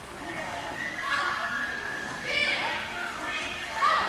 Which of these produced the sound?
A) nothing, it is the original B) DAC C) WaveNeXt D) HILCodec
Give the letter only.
B